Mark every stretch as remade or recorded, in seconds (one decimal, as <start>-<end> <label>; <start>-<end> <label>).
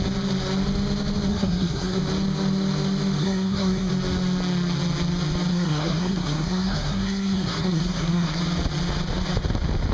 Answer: 0.0-1.3 recorded; 1.3-2.0 remade; 2.0-3.2 recorded; 3.2-3.9 remade; 3.9-5.5 recorded; 5.5-8.4 remade; 8.4-9.9 recorded